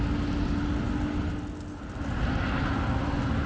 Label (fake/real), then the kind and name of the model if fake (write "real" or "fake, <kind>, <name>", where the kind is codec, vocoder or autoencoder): real